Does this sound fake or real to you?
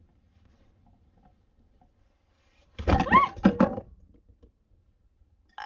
real